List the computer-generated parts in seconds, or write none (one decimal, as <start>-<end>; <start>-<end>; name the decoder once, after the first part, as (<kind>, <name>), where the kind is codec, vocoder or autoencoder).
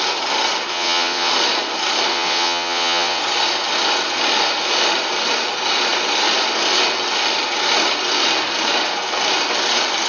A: 0.7-1.3 (vocoder, WaveNeXt); 2.1-3.2